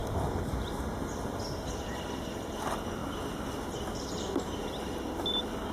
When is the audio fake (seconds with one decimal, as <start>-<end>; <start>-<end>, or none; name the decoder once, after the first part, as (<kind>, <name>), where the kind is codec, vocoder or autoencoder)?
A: none